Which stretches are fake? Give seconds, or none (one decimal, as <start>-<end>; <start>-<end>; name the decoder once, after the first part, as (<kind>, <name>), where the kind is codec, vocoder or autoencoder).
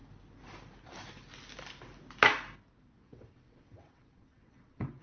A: 2.8-5.0 (vocoder, WaveNeXt)